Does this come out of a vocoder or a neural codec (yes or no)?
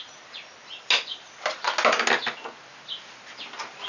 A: no